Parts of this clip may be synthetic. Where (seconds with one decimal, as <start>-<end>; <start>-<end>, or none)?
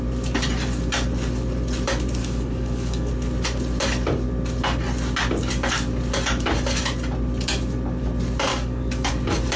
2.2-3.1; 8.5-9.1